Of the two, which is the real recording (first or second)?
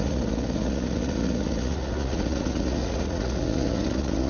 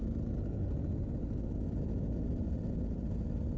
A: second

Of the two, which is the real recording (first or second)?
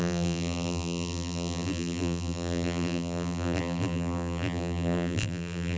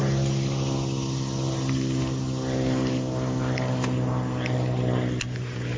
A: second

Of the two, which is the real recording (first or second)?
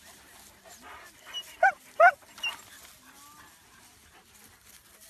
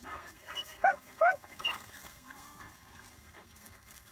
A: first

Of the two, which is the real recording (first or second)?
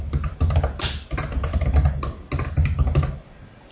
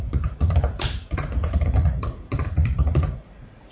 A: first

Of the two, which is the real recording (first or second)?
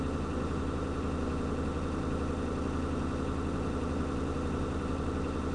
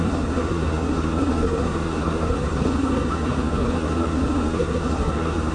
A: first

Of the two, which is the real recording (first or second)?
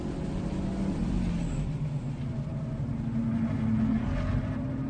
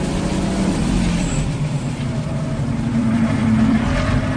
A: first